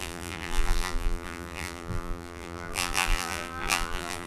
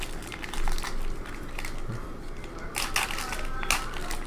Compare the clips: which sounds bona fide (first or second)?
second